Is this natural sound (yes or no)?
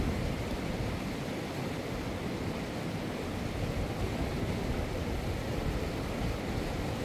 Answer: yes